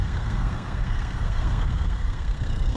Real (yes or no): no